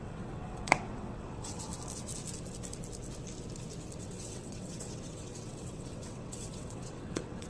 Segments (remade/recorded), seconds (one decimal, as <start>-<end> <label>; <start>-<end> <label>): 0.0-1.7 remade; 1.7-4.0 recorded; 4.0-7.5 remade